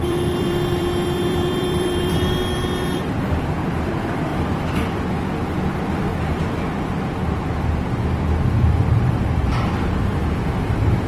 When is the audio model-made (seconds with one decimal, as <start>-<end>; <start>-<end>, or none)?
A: 0.0-4.3; 8.4-11.1